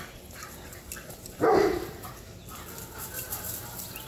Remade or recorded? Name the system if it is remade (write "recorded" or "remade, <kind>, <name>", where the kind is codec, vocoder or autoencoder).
recorded